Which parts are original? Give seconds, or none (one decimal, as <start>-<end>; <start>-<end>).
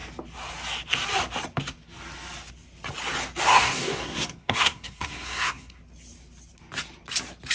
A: 0.0-3.5; 5.8-7.5